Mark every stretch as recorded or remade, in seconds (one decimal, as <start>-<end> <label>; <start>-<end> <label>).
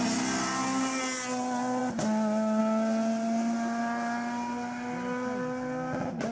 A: 0.0-6.3 recorded